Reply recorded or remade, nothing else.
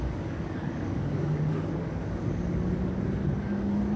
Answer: remade